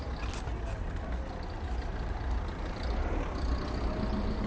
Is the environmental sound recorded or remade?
recorded